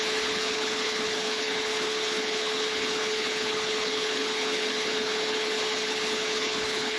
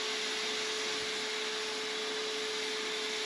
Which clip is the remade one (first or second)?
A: first